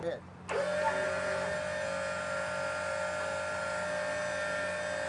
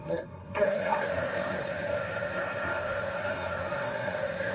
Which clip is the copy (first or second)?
second